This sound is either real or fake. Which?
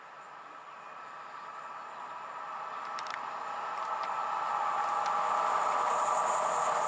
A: real